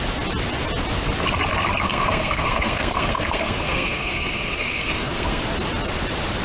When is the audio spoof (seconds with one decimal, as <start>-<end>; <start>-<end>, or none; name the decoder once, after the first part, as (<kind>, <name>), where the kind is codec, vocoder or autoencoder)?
1.9-5.4 (codec, SNAC)